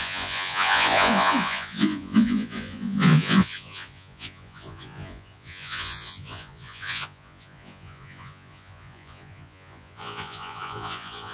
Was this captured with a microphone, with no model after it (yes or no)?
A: no